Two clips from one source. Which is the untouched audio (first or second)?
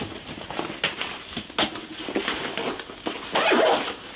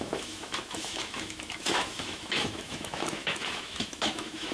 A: first